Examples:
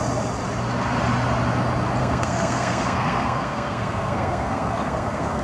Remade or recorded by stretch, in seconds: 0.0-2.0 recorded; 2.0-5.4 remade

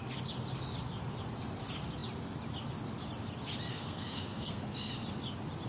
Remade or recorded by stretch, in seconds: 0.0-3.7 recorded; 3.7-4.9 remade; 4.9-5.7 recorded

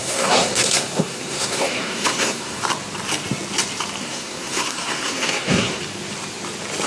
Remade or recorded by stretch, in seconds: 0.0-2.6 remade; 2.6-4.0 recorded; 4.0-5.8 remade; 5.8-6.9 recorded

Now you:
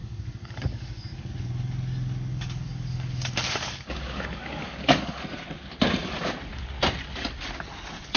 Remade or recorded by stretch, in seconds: 0.0-1.3 remade; 1.3-2.3 recorded; 2.3-5.2 remade; 5.2-8.2 recorded

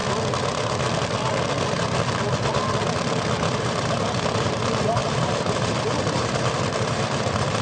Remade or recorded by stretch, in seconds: 0.0-3.6 recorded; 3.6-7.6 remade